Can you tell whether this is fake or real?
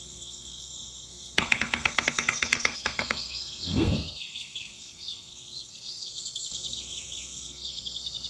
fake